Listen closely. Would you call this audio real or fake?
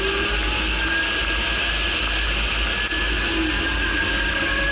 real